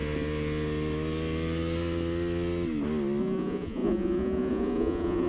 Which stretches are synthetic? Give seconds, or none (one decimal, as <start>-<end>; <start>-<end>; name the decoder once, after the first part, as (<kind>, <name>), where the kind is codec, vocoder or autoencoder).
3.2-5.3 (vocoder, Vocos)